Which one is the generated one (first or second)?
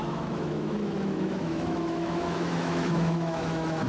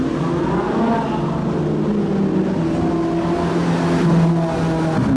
first